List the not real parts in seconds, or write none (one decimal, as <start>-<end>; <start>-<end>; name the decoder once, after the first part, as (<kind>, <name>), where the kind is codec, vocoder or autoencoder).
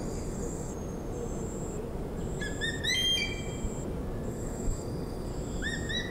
0.0-0.7 (codec, DAC); 4.3-5.3